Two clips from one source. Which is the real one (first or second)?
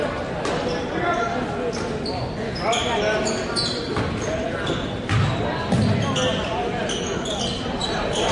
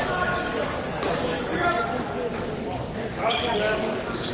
first